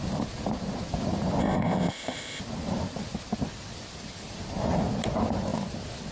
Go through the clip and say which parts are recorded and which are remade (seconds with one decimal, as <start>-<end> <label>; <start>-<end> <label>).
0.0-1.4 recorded; 1.4-2.4 remade; 2.4-6.1 recorded